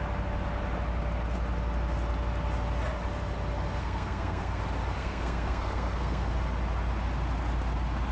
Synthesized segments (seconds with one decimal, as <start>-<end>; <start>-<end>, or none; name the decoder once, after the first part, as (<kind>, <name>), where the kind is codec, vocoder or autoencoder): 3.8-4.6 (codec, SNAC); 5.0-6.3